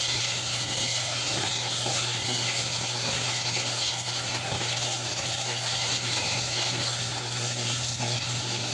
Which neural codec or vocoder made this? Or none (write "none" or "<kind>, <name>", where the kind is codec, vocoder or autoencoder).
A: codec, SNAC